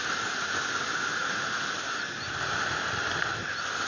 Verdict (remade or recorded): recorded